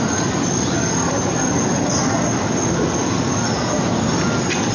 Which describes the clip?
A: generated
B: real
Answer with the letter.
B